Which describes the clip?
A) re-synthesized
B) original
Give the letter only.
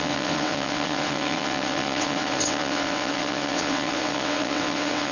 A